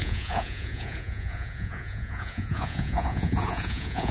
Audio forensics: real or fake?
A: fake